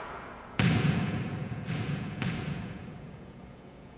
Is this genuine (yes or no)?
no